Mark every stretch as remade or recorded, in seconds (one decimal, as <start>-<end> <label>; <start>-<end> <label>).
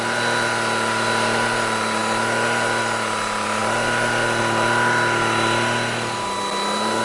0.0-7.0 recorded